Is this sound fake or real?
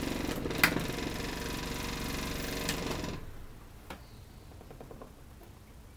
real